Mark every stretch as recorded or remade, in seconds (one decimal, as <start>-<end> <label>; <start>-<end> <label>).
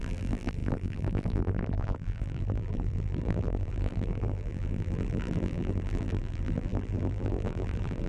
0.0-8.1 remade